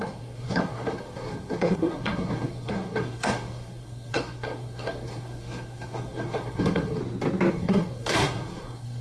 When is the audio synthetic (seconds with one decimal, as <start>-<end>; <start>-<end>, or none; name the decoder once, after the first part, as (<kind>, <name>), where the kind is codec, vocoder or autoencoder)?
0.0-7.0 (codec, SNAC); 7.5-9.0